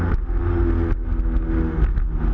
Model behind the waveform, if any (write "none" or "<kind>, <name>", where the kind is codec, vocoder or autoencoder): none